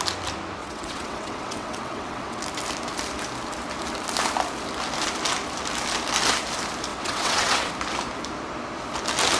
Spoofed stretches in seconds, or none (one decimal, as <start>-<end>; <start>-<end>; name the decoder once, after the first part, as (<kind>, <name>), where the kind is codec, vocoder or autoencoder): 0.6-2.4 (vocoder, WaveNeXt); 6.9-7.7